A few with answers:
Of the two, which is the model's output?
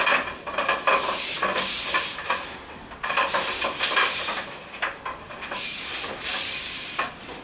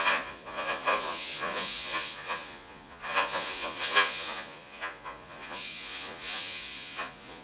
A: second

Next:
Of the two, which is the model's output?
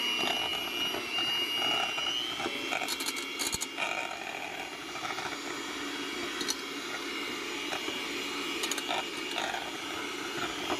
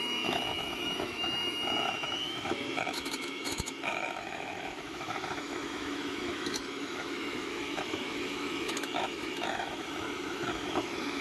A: second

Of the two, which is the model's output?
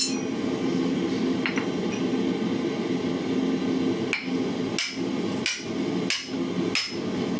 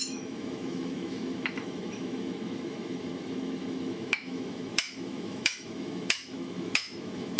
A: second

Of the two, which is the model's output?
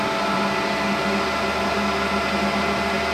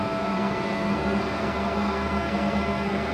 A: second